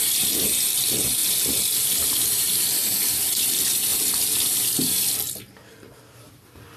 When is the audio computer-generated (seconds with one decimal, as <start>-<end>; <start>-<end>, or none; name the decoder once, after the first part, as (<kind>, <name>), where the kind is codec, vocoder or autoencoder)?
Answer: none